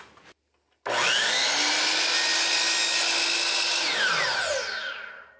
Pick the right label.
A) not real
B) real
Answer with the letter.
B